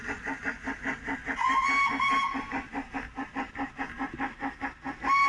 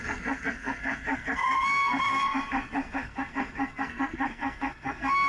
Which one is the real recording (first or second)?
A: first